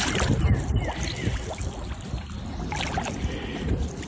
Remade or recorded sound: recorded